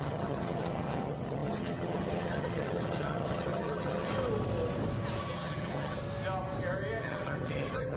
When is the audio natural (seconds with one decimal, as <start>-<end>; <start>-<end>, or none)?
4.1-5.2; 6.0-7.0